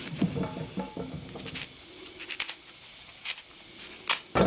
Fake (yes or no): no